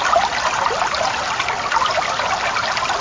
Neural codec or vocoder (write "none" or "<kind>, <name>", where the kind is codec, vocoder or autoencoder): none